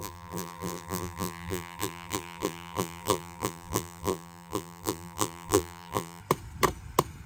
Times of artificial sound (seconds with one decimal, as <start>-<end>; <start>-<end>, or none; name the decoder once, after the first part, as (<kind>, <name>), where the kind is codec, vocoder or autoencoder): 0.0-6.2 (vocoder, BigVGAN v2)